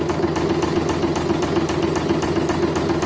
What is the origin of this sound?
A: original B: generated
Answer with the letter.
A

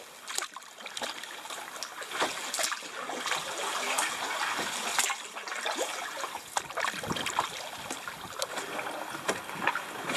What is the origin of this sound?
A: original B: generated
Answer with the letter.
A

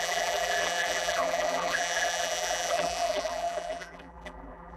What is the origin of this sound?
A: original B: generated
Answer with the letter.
B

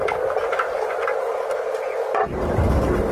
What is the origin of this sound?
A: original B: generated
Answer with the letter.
B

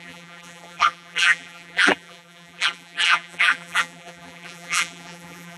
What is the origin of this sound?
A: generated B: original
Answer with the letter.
A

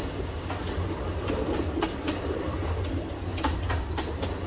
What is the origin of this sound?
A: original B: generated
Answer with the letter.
A